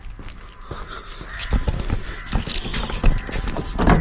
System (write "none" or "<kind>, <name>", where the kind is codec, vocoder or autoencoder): none